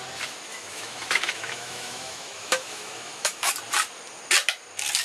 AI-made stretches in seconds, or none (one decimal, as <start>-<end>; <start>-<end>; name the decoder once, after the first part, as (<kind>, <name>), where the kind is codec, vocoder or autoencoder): 0.5-3.5 (autoencoder, DAC-VAE)